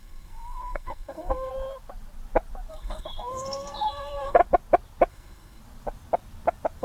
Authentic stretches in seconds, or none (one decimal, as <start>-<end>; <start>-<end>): 1.5-2.7; 4.4-5.1; 5.6-6.8